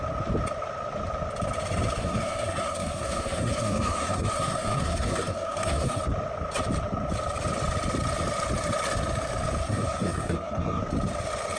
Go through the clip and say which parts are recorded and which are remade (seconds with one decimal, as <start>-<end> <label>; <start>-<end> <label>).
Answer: 0.0-2.0 recorded; 2.0-6.0 remade; 6.0-9.6 recorded; 9.6-10.8 remade; 10.8-11.6 recorded